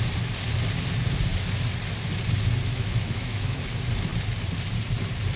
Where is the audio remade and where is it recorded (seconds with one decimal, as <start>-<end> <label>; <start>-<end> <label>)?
0.0-2.7 recorded; 2.7-3.6 remade; 3.6-5.4 recorded